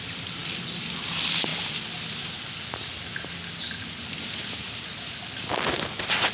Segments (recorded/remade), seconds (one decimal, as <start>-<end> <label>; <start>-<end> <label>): 0.0-6.3 recorded